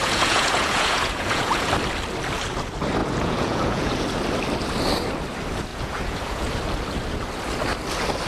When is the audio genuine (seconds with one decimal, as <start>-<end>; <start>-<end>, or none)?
1.7-3.0; 3.9-5.7; 6.6-8.3